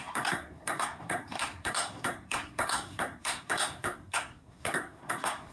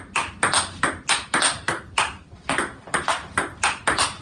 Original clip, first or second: second